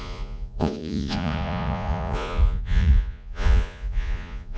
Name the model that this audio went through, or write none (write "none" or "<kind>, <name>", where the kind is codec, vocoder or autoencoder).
vocoder, Vocos